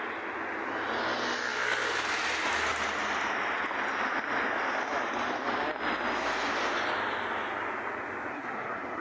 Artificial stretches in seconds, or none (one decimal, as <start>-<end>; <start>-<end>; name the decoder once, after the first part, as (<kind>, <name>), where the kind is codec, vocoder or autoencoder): 8.3-9.0 (codec, SNAC)